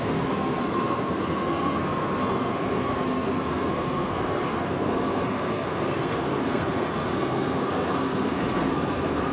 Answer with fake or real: fake